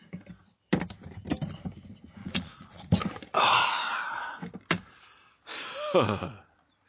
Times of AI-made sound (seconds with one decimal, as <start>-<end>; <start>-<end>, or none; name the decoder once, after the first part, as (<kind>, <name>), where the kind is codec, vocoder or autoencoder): 2.2-2.8 (vocoder, Vocos)